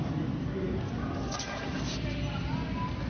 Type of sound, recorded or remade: recorded